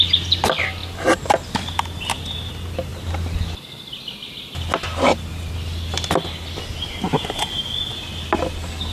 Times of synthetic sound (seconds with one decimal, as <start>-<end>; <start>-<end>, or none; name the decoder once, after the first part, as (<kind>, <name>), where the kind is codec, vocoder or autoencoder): none